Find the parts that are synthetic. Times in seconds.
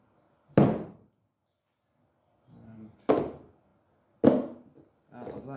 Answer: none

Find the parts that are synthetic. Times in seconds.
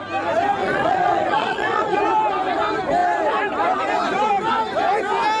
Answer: 0.6-2.0 (vocoder, Vocos)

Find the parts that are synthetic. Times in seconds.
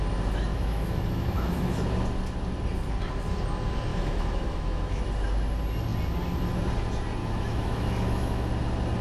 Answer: 0.5-1.8 (autoencoder, DAC-VAE); 3.9-5.0; 7.2-8.5